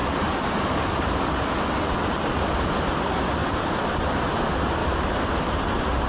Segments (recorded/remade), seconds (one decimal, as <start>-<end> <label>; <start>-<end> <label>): 0.0-1.2 remade; 1.2-3.4 recorded; 3.4-4.2 remade; 4.2-4.8 recorded; 4.8-5.6 remade; 5.6-6.1 recorded